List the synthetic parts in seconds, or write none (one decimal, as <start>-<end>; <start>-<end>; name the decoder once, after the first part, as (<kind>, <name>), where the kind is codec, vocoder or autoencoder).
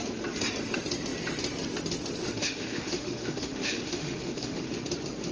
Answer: 2.2-4.7 (autoencoder, DAC-VAE)